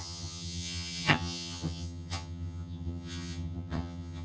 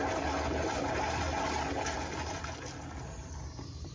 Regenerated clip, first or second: first